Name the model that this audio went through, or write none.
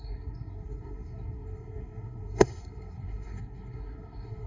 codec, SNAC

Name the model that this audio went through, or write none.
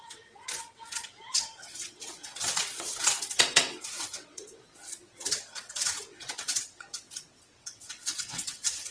vocoder, WaveNeXt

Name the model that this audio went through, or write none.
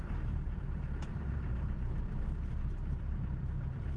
vocoder, BigVGAN v2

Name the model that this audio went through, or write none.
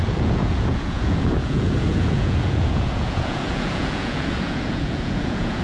vocoder, Vocos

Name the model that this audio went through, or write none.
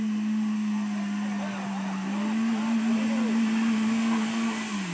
none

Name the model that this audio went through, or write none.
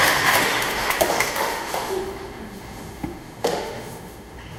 autoencoder, DAC-VAE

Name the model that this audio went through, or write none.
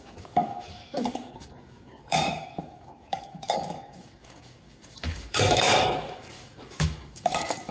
codec, DAC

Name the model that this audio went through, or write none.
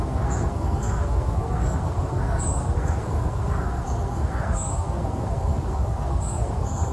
codec, SNAC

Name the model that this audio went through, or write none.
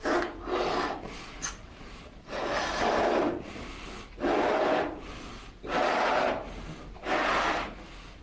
none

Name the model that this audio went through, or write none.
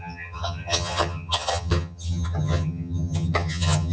vocoder, HiFi-GAN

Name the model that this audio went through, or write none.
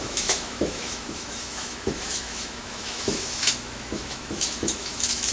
autoencoder, DAC-VAE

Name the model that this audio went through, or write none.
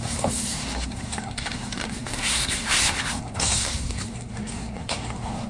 codec, SNAC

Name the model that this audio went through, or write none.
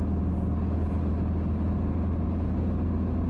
none